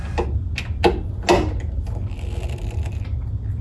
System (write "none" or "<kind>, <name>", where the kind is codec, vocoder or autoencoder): none